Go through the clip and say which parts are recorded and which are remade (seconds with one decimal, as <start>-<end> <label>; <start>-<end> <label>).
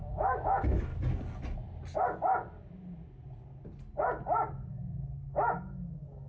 0.0-0.9 remade; 0.9-4.7 recorded; 4.7-6.3 remade